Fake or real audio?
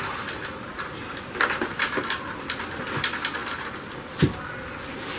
real